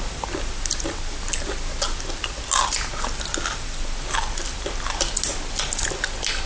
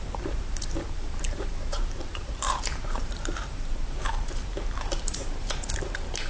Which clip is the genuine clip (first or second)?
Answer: first